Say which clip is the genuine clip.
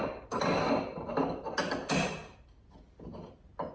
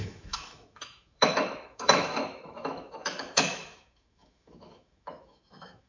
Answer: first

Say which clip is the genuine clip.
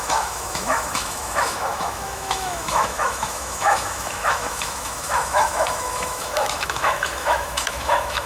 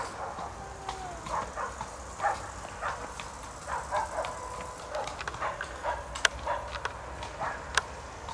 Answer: second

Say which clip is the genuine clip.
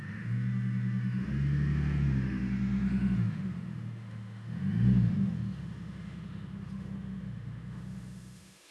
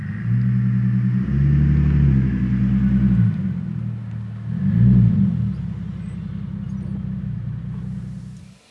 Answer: second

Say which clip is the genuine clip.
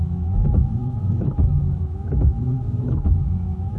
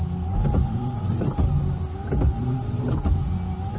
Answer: second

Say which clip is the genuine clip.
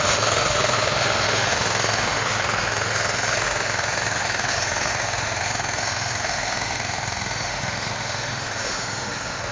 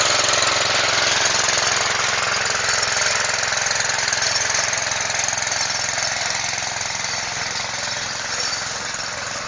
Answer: second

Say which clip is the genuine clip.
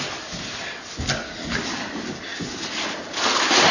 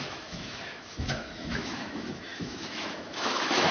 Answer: first